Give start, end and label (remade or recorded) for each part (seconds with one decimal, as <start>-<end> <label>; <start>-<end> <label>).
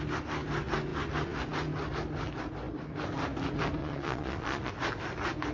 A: 0.0-3.8 recorded; 3.8-4.7 remade; 4.7-5.5 recorded